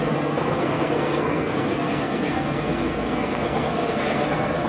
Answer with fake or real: fake